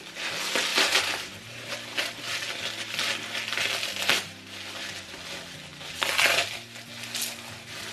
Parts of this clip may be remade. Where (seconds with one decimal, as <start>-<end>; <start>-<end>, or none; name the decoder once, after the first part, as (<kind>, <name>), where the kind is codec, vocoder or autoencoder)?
0.7-1.7 (vocoder, BigVGAN v2)

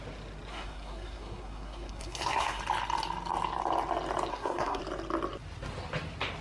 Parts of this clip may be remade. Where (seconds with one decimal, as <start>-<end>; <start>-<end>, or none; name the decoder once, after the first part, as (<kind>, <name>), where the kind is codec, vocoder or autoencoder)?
0.5-2.6 (codec, SNAC); 4.3-4.8